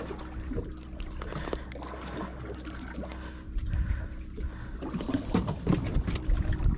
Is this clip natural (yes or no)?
yes